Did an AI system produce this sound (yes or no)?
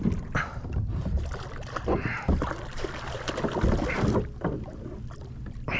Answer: no